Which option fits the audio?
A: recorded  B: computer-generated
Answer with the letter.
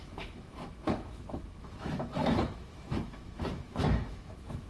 B